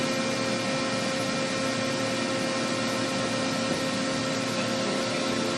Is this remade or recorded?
recorded